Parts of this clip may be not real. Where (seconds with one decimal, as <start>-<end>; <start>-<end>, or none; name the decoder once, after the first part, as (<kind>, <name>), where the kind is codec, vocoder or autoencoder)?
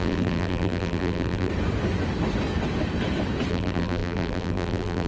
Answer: 0.0-1.5 (vocoder, BigVGAN v2); 3.5-5.1